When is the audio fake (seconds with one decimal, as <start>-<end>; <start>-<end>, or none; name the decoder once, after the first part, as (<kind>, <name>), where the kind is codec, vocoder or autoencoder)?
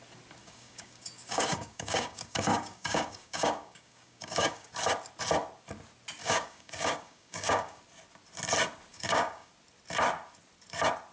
0.4-4.7 (codec, DAC); 6.2-7.8; 8.9-9.5